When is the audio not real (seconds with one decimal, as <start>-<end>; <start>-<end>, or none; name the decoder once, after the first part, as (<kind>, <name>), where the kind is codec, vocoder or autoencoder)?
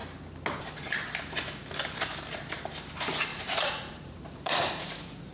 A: 3.3-5.3 (vocoder, Vocos)